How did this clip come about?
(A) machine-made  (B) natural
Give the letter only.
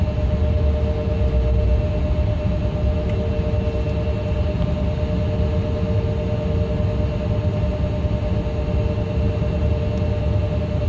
B